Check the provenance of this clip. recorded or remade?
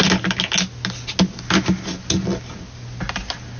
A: recorded